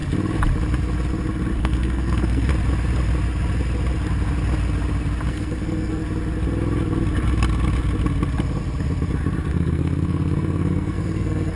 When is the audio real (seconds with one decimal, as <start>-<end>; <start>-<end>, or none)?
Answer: 0.0-1.6; 2.5-5.3; 6.0-9.5